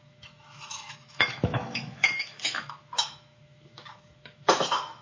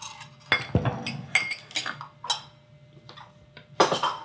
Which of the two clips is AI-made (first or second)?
first